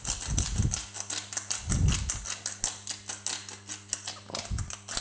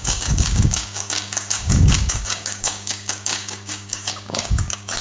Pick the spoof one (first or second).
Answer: second